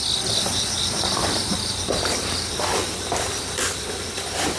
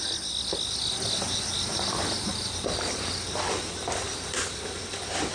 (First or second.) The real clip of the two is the second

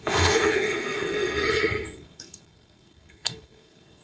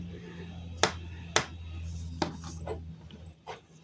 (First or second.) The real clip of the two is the second